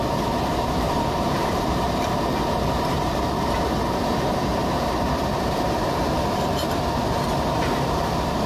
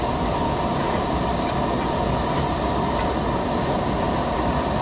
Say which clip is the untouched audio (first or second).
second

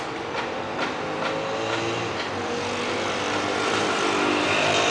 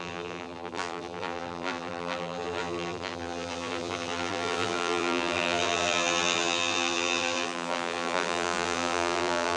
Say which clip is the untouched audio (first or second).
first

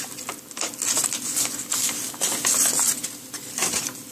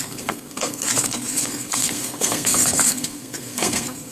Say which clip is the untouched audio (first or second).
first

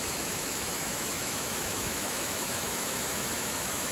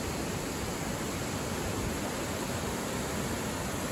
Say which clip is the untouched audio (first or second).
second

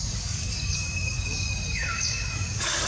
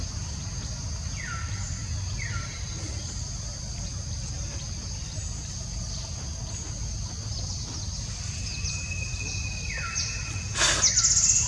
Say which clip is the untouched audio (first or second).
second